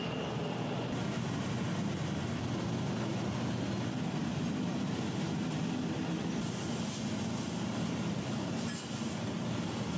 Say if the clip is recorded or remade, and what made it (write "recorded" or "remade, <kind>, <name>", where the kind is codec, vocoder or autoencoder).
recorded